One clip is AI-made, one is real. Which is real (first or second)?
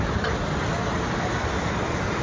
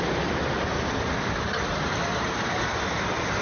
first